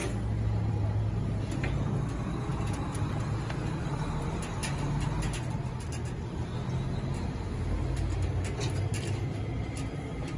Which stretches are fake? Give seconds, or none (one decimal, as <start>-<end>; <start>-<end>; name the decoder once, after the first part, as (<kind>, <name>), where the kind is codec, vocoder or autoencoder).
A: none